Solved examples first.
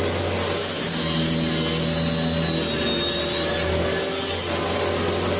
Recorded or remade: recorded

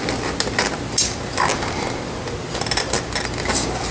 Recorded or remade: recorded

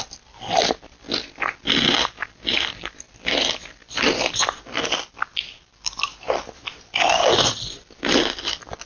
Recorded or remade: recorded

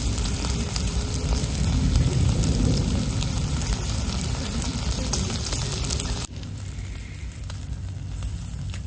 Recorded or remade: recorded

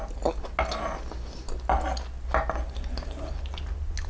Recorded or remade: recorded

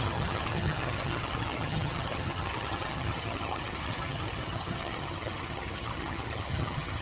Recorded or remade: remade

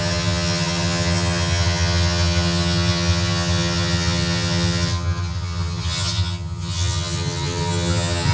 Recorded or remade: remade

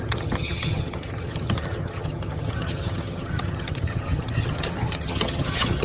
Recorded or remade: remade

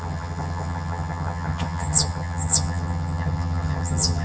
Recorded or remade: remade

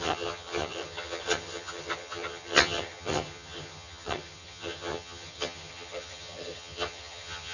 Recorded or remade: remade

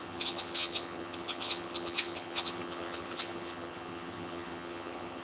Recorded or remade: remade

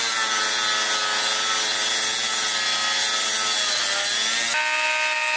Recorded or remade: recorded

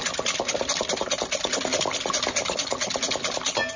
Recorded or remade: recorded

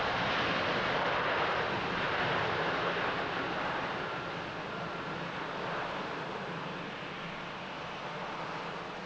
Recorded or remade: recorded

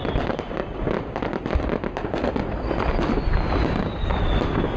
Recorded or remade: recorded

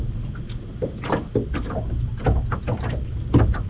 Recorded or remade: recorded